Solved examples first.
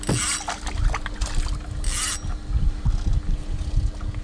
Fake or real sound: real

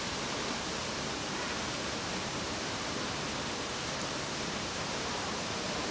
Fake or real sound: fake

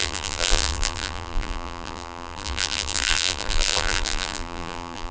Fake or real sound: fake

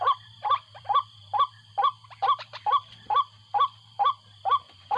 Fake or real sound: fake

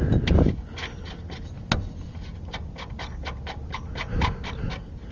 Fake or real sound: real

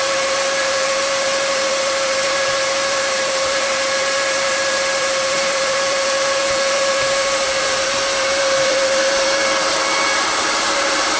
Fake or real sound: fake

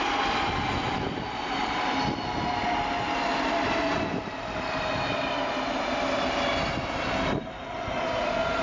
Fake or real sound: real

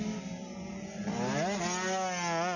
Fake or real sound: real